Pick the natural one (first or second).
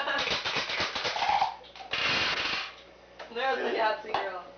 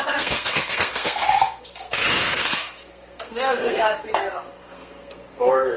first